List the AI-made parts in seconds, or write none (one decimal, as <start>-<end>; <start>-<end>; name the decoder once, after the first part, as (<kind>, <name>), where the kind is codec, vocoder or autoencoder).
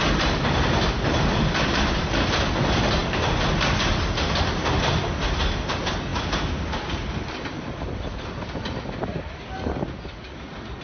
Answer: none